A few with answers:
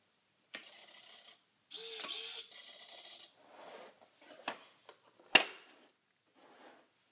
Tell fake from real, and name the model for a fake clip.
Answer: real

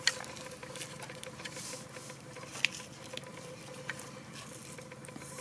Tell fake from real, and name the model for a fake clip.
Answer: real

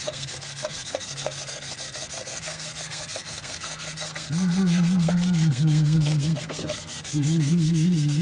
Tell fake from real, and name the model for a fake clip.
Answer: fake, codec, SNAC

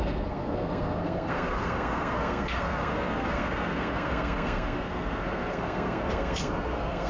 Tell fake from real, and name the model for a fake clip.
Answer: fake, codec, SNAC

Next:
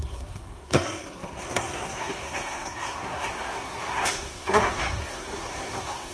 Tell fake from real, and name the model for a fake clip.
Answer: fake, codec, SNAC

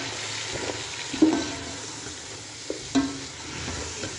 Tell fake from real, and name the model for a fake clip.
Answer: real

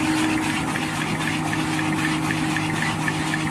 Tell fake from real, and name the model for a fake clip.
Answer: real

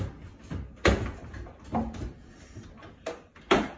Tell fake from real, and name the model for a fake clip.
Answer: real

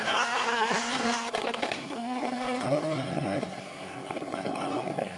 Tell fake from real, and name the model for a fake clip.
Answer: fake, codec, SNAC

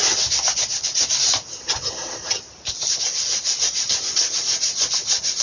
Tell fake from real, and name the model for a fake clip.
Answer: real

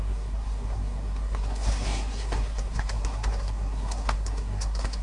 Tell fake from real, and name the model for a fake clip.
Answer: fake, codec, SNAC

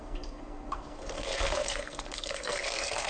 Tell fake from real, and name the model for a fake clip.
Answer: fake, codec, SNAC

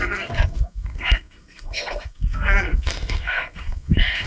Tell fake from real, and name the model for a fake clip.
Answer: fake, codec, SNAC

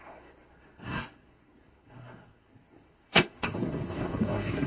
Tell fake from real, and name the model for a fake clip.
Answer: fake, codec, SNAC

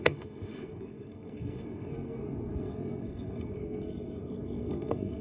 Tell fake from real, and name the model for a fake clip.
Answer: fake, codec, SNAC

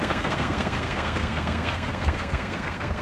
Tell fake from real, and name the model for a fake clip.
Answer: fake, codec, SNAC